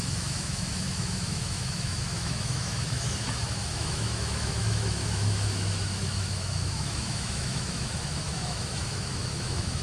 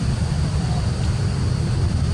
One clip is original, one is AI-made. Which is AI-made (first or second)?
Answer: first